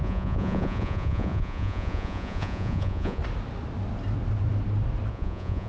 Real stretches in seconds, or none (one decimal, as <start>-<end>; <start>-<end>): 3.2-5.1